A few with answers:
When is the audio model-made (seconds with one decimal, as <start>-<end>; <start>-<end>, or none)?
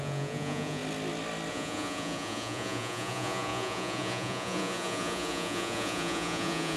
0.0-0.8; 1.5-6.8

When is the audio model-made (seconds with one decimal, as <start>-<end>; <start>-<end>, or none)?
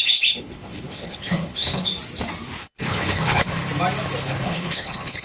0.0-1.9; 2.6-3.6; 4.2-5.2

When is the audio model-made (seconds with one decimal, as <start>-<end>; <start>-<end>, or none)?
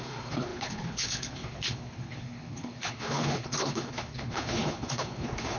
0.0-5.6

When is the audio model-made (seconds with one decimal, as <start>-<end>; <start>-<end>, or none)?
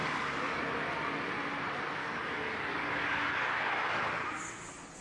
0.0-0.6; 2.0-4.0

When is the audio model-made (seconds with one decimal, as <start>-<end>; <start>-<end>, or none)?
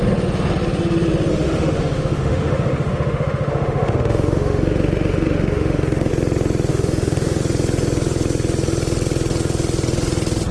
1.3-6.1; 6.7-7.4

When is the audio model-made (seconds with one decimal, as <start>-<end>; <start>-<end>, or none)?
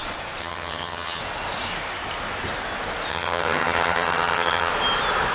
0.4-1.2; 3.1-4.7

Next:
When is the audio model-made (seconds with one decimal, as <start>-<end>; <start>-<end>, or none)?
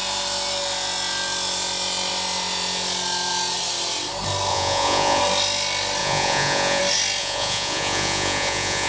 4.5-5.2; 6.0-6.8; 7.2-8.9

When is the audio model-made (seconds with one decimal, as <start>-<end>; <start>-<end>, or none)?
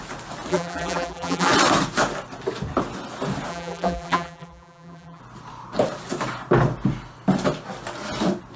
0.5-1.5; 3.5-5.2